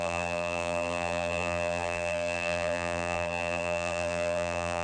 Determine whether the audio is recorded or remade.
remade